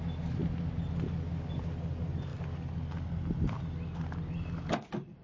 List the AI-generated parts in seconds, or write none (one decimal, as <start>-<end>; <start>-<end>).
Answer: none